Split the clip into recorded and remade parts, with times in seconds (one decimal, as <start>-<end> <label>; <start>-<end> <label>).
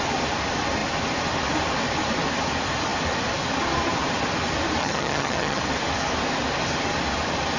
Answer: 0.0-4.8 recorded; 4.8-5.6 remade; 5.6-7.6 recorded